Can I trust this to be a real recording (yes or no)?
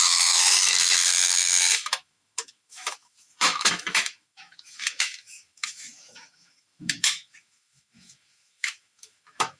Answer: no